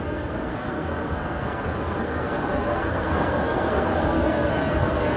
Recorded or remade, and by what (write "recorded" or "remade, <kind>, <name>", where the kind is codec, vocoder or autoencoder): remade, codec, SNAC